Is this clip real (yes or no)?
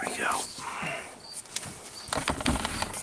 yes